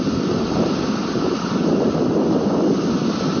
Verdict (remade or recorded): recorded